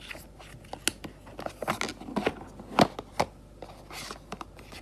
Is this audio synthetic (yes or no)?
no